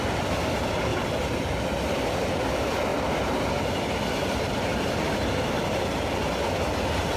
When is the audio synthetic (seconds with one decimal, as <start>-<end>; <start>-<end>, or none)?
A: 0.9-1.6